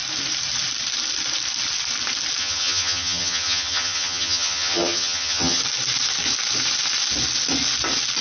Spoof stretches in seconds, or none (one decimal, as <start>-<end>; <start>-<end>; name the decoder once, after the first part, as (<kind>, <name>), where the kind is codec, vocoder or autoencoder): 2.4-5.6 (vocoder, HiFi-GAN)